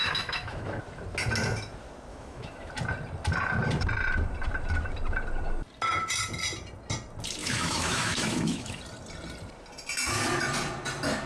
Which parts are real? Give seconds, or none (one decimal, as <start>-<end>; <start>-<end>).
0.8-2.1; 2.7-7.4; 8.8-11.3